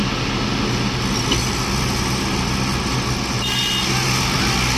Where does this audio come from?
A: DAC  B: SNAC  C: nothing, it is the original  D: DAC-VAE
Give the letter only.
C